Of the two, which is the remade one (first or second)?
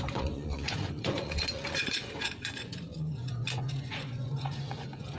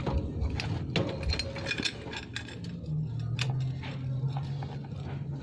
first